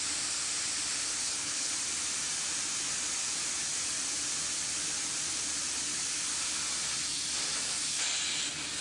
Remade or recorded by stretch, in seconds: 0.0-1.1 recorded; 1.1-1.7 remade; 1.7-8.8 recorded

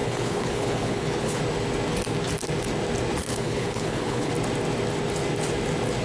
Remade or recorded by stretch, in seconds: 0.0-1.4 remade; 1.4-3.3 recorded; 3.3-4.3 remade; 4.3-6.0 recorded

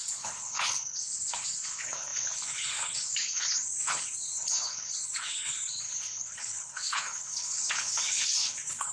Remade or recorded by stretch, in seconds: 0.0-8.9 remade

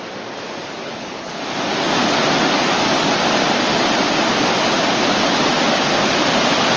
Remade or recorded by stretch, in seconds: 0.0-0.8 recorded; 0.8-1.4 remade; 1.4-6.8 recorded

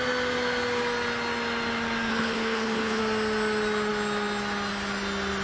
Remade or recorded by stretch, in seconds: 0.0-2.1 recorded; 2.1-3.0 remade; 3.0-5.4 recorded

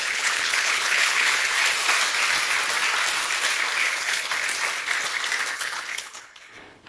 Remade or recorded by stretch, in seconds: 0.0-1.6 remade; 1.6-3.8 recorded; 3.8-4.3 remade; 4.3-5.5 recorded; 5.5-6.9 remade

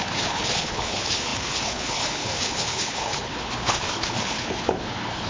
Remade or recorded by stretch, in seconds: 0.0-5.3 remade

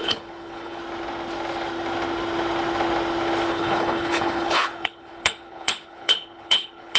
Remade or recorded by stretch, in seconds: 0.0-0.8 remade; 0.8-3.5 recorded; 3.5-7.0 remade